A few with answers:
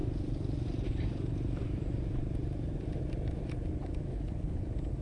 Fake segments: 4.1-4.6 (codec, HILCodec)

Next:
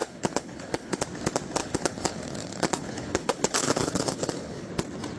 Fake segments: 0.0-1.0 (codec, HILCodec); 1.6-4.7